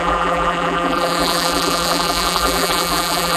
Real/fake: fake